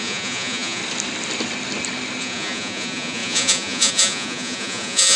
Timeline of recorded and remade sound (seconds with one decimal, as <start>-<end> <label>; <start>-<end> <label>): 0.0-0.8 remade; 0.8-2.2 recorded; 2.2-5.2 remade

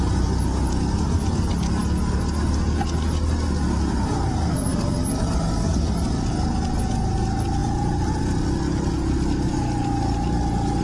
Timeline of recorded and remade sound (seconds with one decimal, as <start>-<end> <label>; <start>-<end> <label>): 0.0-10.8 recorded

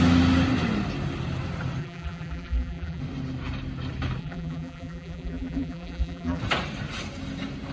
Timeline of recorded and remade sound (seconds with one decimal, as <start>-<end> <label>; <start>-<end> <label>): 0.0-1.8 recorded; 1.8-3.0 remade; 3.0-4.2 recorded; 4.2-6.4 remade; 6.4-7.7 recorded

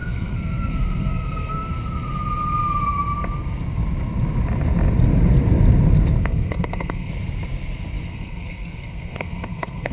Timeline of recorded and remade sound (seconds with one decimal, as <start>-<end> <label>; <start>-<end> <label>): 0.0-1.7 remade; 1.7-6.2 recorded; 6.2-7.1 remade; 7.1-8.1 recorded; 8.1-9.9 remade